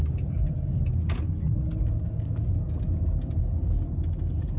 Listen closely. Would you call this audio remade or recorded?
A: recorded